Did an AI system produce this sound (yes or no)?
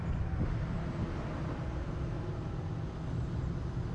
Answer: no